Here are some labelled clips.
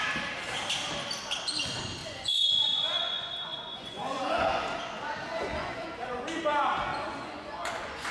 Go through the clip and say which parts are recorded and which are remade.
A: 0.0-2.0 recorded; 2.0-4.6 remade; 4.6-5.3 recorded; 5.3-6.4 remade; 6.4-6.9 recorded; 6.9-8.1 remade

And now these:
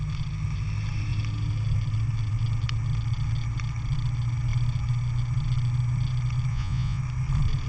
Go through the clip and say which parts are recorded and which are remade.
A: 0.0-6.5 recorded; 6.5-7.0 remade; 7.0-7.7 recorded

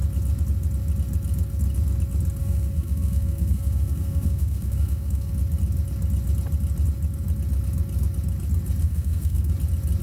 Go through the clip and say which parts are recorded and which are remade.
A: 0.0-2.4 recorded; 2.4-5.3 remade; 5.3-8.8 recorded; 8.8-9.5 remade; 9.5-10.0 recorded

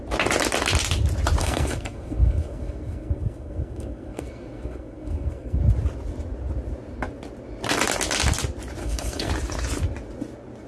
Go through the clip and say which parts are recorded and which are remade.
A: 0.0-1.4 recorded; 1.4-5.6 remade; 5.6-8.8 recorded; 8.8-9.3 remade; 9.3-10.7 recorded

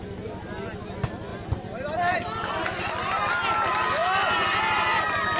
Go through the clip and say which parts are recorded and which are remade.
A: 0.0-5.4 recorded

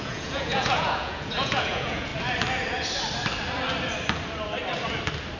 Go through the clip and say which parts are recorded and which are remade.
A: 0.0-2.1 remade; 2.1-5.4 recorded

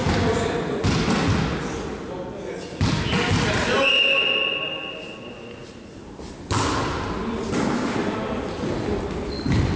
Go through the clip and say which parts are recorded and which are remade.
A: 0.0-9.8 recorded

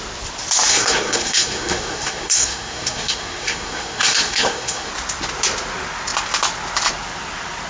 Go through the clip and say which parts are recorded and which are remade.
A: 0.0-0.7 recorded; 0.7-4.9 remade; 4.9-7.7 recorded